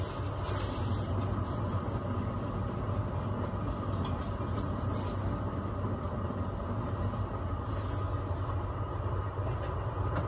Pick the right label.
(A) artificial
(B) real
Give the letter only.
B